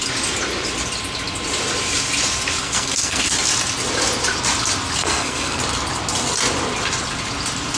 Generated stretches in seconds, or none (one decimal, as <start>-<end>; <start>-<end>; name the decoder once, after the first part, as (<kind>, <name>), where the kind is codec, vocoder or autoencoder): 2.6-3.3 (codec, SNAC); 5.0-5.6